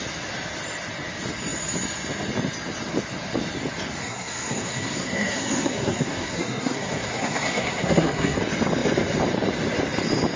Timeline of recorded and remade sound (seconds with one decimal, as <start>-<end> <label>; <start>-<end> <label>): 0.0-4.0 recorded; 4.0-8.4 remade; 8.4-10.4 recorded